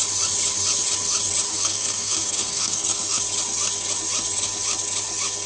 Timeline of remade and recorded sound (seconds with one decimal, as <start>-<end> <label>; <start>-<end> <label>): 0.0-1.5 recorded; 1.5-3.2 remade; 3.2-5.5 recorded